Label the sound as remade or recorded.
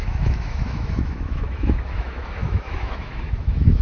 remade